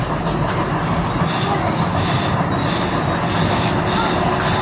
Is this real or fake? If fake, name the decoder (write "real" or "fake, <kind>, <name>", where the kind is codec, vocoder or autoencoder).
real